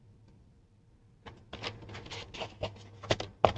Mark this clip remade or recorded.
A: recorded